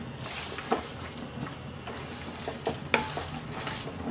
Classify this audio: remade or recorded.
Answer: recorded